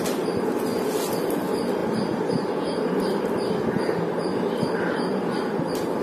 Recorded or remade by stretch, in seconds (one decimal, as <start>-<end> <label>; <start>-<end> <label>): 0.0-6.0 recorded

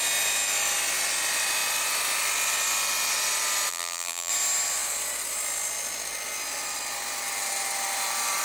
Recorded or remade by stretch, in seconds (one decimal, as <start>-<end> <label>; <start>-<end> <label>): 0.0-3.7 recorded; 3.7-4.3 remade; 4.3-8.4 recorded

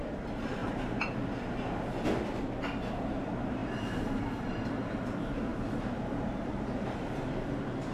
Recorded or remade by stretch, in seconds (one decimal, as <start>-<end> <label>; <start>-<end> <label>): 0.0-0.6 remade; 0.6-2.9 recorded; 2.9-7.9 remade

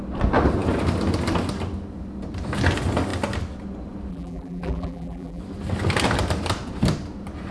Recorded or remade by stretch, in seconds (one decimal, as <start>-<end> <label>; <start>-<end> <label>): 0.0-4.1 recorded; 4.1-5.4 remade; 5.4-7.5 recorded

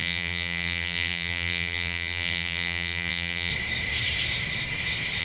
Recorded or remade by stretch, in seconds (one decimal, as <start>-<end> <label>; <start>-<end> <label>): 0.0-3.5 remade; 3.5-5.2 recorded